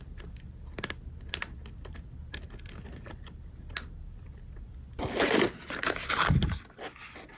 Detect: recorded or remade recorded